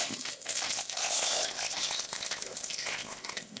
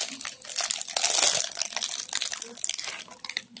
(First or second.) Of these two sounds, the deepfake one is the first